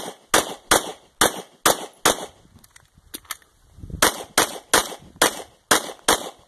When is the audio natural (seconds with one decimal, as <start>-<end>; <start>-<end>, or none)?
0.0-6.5

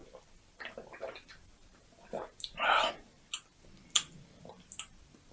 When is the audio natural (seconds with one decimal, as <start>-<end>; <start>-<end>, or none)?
0.0-5.3

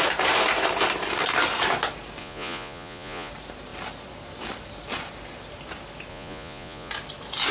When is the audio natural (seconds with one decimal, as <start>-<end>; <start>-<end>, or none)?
0.0-2.2; 3.3-6.1; 6.9-7.5

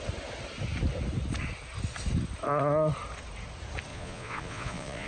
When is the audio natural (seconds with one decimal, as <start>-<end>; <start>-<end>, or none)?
0.0-3.9